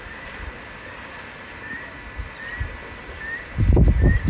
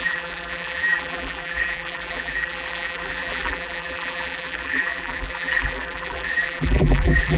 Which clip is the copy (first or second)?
second